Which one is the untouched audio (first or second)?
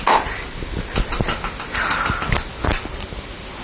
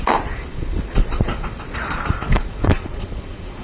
first